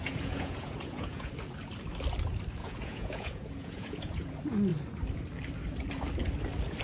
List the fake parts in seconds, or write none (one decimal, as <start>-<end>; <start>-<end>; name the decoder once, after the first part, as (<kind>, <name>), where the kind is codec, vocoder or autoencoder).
0.0-1.3 (vocoder, Vocos); 2.6-4.3